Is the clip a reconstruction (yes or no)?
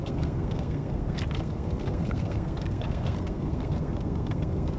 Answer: yes